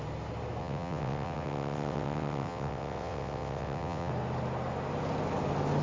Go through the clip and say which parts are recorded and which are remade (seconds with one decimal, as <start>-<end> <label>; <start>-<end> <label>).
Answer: 0.0-0.6 recorded; 0.6-4.1 remade; 4.1-5.8 recorded

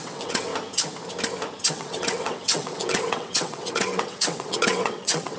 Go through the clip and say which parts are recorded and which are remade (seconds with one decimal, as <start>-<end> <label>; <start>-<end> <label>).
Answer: 0.0-0.5 remade; 0.5-1.7 recorded; 1.7-5.4 remade

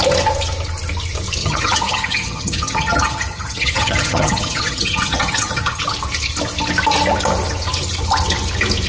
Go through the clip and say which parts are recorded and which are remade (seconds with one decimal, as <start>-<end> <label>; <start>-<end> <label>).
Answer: 0.0-1.4 recorded; 1.4-5.8 remade; 5.8-8.9 recorded

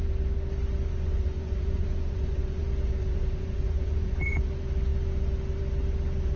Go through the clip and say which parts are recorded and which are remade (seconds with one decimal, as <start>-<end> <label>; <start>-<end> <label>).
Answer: 0.0-0.9 recorded; 0.9-2.6 remade; 2.6-3.0 recorded; 3.0-4.5 remade; 4.5-6.4 recorded

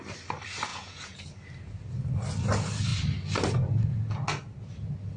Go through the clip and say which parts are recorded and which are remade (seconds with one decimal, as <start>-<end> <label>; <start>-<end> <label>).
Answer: 0.0-0.7 recorded; 0.7-1.2 remade; 1.2-5.2 recorded

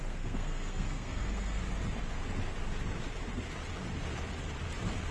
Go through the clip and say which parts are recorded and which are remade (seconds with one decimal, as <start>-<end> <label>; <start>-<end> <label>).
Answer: 0.0-1.6 remade; 1.6-5.1 recorded

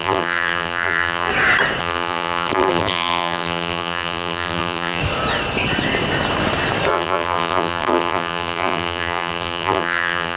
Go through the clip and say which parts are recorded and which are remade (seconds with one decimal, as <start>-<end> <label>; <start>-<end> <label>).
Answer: 0.0-1.3 remade; 1.3-1.8 recorded; 1.8-5.0 remade; 5.0-6.9 recorded; 6.9-10.4 remade

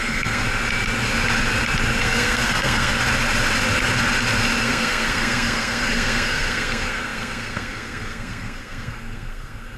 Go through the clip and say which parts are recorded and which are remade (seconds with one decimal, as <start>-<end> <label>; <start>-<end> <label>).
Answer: 0.0-0.4 remade; 0.4-2.0 recorded; 2.0-2.9 remade; 2.9-4.6 recorded; 4.6-9.8 remade